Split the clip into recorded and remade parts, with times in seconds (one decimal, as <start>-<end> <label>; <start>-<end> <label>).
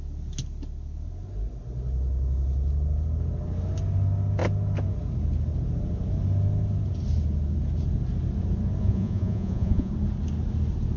0.0-8.8 recorded; 8.8-9.9 remade; 9.9-11.0 recorded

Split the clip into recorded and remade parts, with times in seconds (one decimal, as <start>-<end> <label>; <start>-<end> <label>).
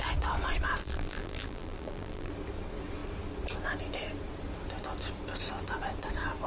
0.0-0.8 recorded; 0.8-2.3 remade; 2.3-6.5 recorded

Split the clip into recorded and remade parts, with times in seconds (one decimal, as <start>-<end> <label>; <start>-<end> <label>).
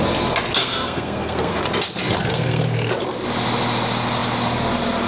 0.0-0.6 recorded; 0.6-1.6 remade; 1.6-2.3 recorded; 2.3-2.9 remade; 2.9-5.1 recorded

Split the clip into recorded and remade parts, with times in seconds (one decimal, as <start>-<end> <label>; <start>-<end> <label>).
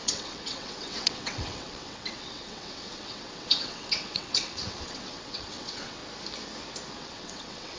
0.0-6.0 remade; 6.0-7.0 recorded; 7.0-7.8 remade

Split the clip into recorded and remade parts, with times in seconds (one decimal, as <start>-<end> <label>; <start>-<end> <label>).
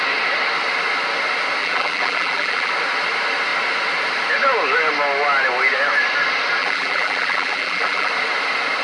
0.0-1.6 recorded; 1.6-2.7 remade; 2.7-6.6 recorded; 6.6-8.1 remade; 8.1-8.8 recorded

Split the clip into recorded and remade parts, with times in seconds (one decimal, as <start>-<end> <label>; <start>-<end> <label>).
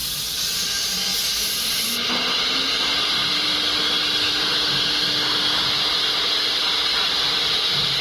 0.0-0.6 remade; 0.6-1.1 recorded; 1.1-2.1 remade; 2.1-8.0 recorded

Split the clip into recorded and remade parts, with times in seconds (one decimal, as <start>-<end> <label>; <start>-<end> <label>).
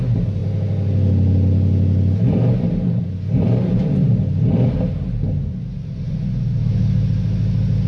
0.0-7.9 recorded